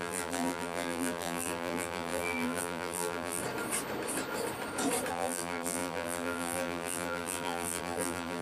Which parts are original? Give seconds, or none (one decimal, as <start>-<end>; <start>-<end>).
3.4-5.1